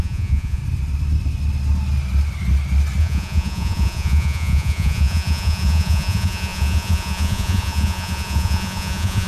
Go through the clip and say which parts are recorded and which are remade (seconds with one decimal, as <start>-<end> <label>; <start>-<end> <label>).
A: 0.0-0.6 remade; 0.6-3.0 recorded; 3.0-9.3 remade